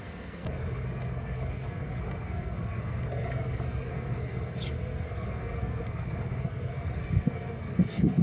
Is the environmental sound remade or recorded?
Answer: remade